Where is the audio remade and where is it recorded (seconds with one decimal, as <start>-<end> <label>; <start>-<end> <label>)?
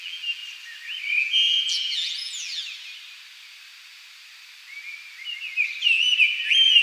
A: 0.0-0.4 remade; 0.4-1.2 recorded; 1.2-2.6 remade; 2.6-6.8 recorded